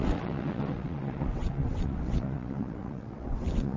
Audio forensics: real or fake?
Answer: fake